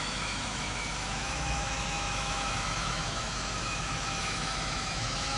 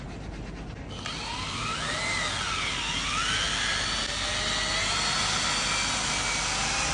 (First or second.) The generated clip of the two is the first